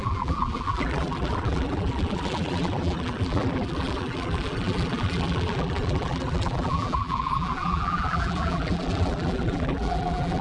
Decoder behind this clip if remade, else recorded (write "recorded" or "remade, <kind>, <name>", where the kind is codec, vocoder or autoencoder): remade, vocoder, BigVGAN v2